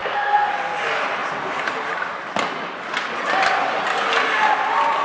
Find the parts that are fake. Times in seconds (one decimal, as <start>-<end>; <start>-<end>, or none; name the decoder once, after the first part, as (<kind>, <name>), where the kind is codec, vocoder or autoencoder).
0.0-0.5 (codec, SNAC)